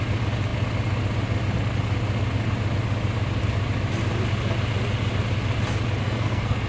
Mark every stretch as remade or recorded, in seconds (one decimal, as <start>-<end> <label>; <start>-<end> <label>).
0.0-6.0 recorded; 6.0-6.7 remade